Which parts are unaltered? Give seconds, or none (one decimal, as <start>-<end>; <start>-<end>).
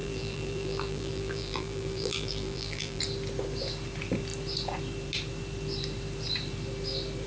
3.0-7.3